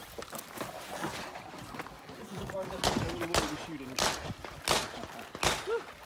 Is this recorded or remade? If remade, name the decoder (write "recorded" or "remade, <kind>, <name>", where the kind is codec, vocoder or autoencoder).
recorded